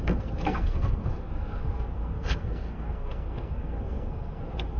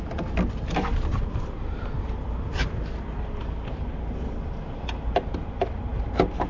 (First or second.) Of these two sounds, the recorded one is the second